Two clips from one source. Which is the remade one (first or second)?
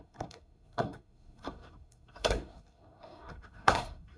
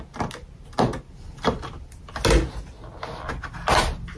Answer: first